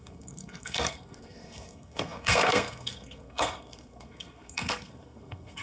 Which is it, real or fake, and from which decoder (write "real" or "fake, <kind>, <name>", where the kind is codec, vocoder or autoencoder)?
fake, codec, SNAC